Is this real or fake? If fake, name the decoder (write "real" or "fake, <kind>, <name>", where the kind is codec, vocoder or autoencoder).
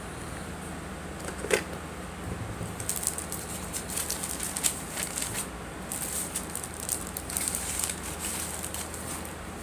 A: real